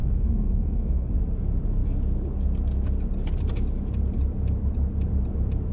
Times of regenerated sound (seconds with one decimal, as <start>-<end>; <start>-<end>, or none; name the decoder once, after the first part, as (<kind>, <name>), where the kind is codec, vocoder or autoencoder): 0.0-1.1 (codec, SNAC)